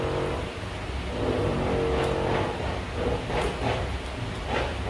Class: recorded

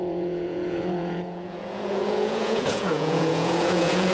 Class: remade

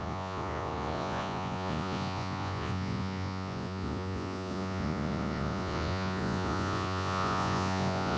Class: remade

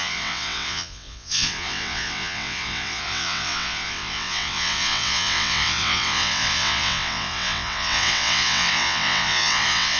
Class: remade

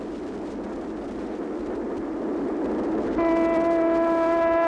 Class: recorded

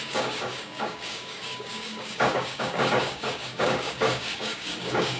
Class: remade